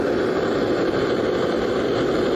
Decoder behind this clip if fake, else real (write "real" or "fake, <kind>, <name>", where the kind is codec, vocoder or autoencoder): real